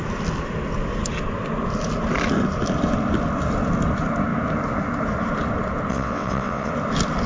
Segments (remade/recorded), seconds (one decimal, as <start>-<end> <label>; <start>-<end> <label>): 0.0-5.9 recorded; 5.9-6.7 remade; 6.7-7.3 recorded